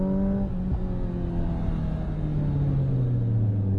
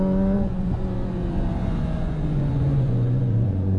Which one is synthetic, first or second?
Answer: second